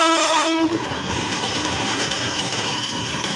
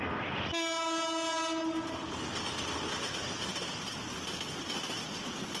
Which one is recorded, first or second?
second